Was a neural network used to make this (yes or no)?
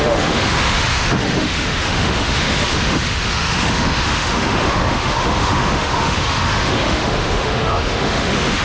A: yes